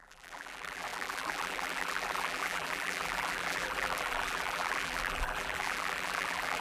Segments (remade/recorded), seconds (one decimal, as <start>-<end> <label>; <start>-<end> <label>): 0.0-6.6 remade